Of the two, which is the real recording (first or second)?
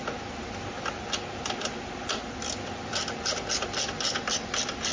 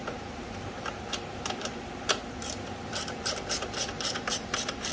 first